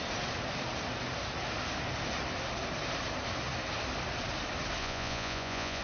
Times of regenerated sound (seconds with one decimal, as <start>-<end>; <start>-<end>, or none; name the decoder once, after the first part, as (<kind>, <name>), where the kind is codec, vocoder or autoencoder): 4.8-5.8 (vocoder, Vocos)